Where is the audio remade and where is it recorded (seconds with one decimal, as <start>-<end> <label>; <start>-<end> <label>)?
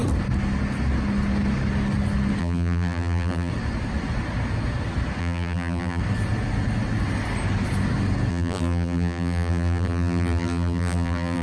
0.0-2.4 recorded; 2.4-3.5 remade; 3.5-5.2 recorded; 5.2-6.0 remade; 6.0-8.3 recorded; 8.3-11.4 remade